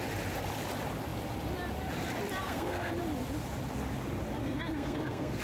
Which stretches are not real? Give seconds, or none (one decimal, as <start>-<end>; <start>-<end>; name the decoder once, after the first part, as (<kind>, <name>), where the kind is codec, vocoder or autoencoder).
2.4-2.9 (codec, SNAC); 4.4-5.4